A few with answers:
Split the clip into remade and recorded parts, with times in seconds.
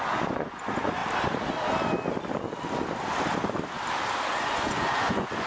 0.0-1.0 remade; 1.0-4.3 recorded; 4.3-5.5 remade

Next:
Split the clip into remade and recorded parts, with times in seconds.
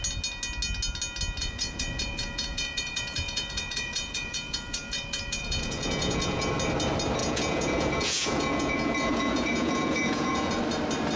0.0-1.4 recorded; 1.4-6.5 remade; 6.5-7.2 recorded; 7.2-10.5 remade; 10.5-11.2 recorded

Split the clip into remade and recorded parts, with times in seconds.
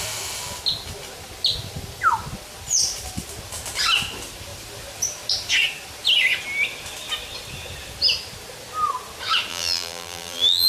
0.0-9.5 recorded; 9.5-10.7 remade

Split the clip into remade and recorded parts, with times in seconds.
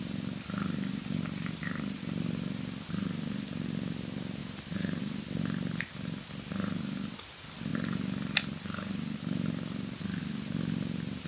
0.0-4.4 recorded; 4.4-5.0 remade; 5.0-11.3 recorded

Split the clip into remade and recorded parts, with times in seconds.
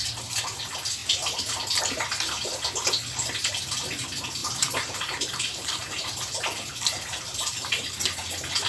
0.0-4.4 recorded; 4.4-7.9 remade; 7.9-8.7 recorded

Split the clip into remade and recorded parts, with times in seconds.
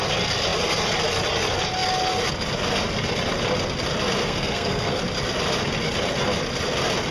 0.0-4.2 recorded; 4.2-5.0 remade; 5.0-7.1 recorded